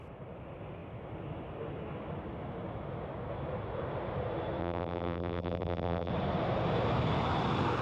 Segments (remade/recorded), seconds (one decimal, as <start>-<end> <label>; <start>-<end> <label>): 0.0-4.6 recorded; 4.6-6.1 remade; 6.1-7.8 recorded